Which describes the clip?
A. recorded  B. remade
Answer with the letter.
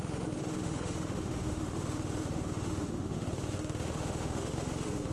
B